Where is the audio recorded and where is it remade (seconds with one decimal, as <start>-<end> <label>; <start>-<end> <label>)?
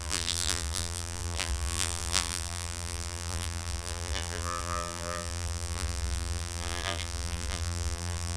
0.0-8.4 remade